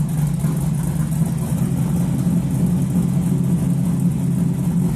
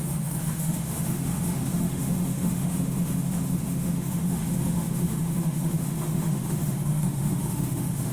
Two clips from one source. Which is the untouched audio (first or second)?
first